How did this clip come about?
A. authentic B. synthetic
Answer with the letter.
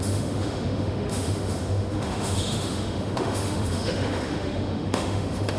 B